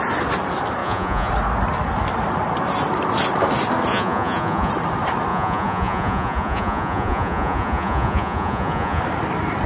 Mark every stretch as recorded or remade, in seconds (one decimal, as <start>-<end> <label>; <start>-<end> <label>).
0.0-0.8 recorded; 0.8-1.3 remade; 1.3-3.9 recorded; 3.9-4.7 remade; 4.7-5.3 recorded; 5.3-9.0 remade; 9.0-9.7 recorded